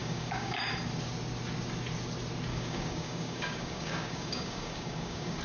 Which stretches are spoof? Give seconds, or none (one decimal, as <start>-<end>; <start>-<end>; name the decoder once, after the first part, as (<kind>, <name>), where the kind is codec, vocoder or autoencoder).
0.0-0.7 (codec, DAC); 2.5-5.4